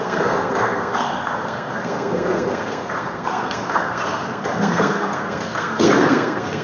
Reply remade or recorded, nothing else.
remade